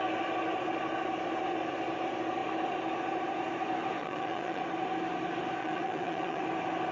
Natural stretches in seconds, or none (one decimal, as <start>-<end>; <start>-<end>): 0.0-4.0; 4.6-5.6; 6.4-6.9